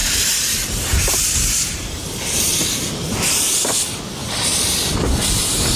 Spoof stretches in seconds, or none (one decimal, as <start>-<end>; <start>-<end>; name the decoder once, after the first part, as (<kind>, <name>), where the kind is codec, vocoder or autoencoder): 0.0-3.5 (vocoder, BigVGAN v2)